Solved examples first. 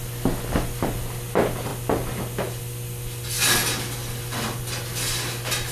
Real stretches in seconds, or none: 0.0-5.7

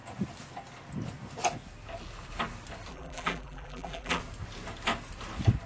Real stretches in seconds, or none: 0.0-2.9; 4.2-5.7

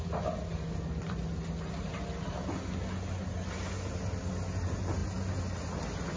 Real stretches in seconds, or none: 0.0-6.2

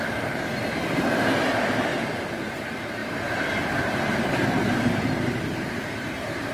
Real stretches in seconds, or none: none

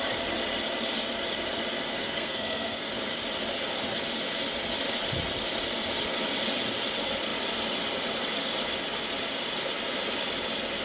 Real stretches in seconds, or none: 0.0-1.9; 2.9-10.8

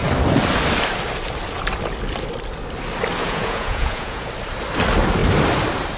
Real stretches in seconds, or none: 0.0-3.2; 4.3-6.0